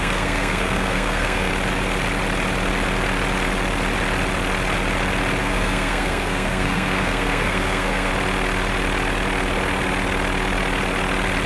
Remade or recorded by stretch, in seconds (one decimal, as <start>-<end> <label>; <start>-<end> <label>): 0.0-1.5 remade; 1.5-5.4 recorded; 5.4-8.1 remade; 8.1-11.5 recorded